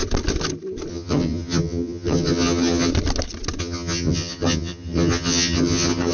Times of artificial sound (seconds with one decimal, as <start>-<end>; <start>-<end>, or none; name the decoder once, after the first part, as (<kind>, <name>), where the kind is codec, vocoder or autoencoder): 0.9-2.9 (vocoder, HiFi-GAN); 3.6-6.1